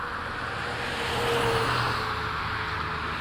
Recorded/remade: recorded